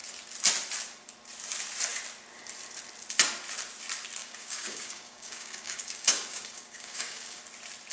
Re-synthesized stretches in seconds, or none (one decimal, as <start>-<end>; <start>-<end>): 4.2-7.4